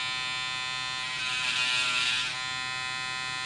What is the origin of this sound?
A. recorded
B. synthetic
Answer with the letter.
A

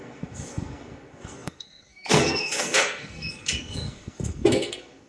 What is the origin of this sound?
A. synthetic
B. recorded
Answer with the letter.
A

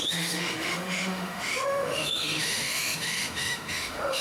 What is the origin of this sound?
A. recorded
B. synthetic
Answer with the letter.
B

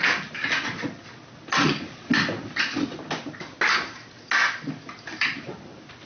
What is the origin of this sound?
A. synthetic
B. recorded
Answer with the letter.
B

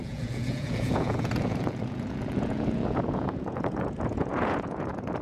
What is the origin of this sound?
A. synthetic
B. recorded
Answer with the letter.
A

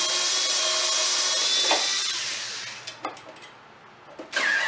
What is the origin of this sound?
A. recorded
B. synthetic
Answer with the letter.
A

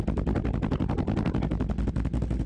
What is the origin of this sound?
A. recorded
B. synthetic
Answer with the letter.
A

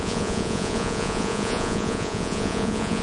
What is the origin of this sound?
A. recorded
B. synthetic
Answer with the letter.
B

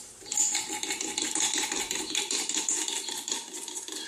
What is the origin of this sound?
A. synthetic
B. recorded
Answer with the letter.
A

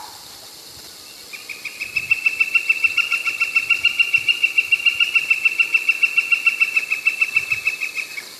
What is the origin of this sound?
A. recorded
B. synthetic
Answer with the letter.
A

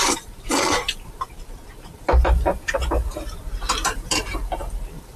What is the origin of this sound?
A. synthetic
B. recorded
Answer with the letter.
A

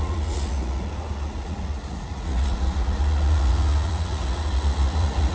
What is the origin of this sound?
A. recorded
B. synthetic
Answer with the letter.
B